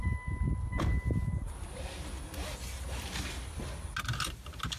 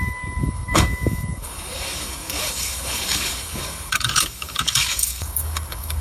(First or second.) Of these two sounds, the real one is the first